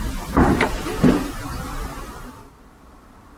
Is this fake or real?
fake